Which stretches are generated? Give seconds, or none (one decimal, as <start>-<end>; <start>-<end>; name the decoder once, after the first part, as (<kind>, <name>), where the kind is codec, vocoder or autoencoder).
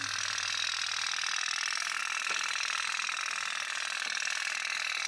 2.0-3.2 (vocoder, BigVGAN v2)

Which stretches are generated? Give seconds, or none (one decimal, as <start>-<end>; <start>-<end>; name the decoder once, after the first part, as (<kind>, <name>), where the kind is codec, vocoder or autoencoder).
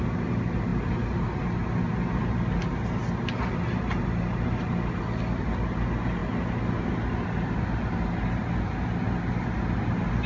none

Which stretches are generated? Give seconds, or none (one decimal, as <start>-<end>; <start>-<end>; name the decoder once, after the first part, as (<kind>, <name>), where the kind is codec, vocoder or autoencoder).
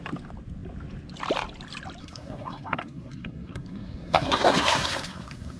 2.0-5.6 (codec, SNAC)